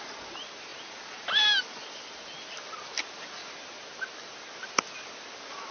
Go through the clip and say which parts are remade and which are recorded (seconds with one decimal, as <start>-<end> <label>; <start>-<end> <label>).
0.0-5.7 recorded